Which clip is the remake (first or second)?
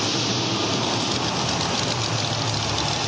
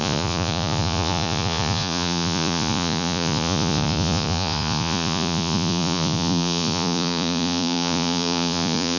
second